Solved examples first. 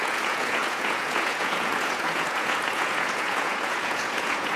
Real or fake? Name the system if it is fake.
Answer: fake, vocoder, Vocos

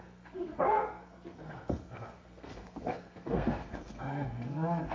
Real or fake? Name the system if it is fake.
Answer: fake, codec, SNAC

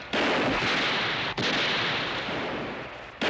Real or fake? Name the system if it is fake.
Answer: real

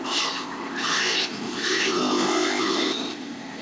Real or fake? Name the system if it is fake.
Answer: fake, codec, ZipCodec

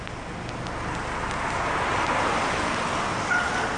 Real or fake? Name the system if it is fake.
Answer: real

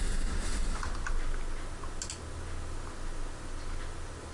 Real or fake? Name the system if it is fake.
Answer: real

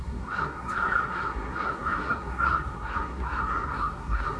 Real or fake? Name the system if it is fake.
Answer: fake, codec, SNAC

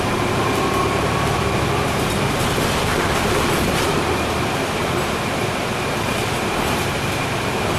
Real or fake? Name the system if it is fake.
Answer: fake, vocoder, BigVGAN v2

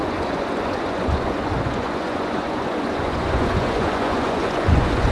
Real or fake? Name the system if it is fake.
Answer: fake, vocoder, Vocos